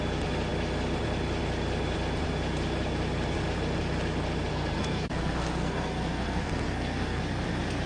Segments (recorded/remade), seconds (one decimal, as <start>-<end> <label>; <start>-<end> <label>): 0.0-4.5 recorded; 4.5-7.2 remade; 7.2-7.9 recorded